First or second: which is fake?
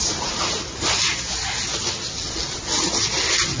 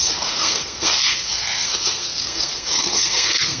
second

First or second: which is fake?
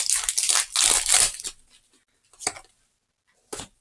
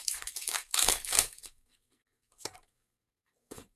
second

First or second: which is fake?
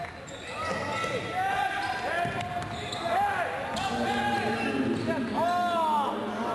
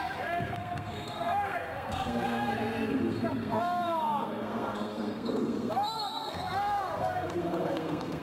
second